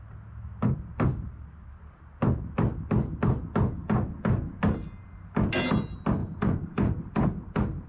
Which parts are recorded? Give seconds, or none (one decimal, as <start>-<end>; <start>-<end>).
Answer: 0.0-6.2